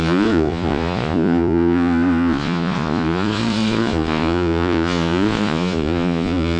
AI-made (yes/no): yes